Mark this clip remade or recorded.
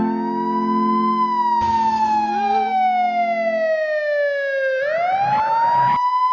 recorded